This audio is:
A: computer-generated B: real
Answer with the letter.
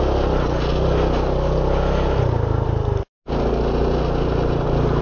B